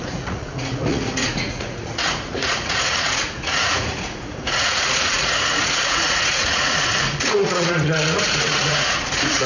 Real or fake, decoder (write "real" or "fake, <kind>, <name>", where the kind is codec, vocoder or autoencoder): fake, vocoder, Vocos